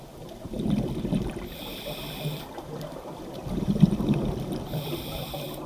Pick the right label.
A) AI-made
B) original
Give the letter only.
A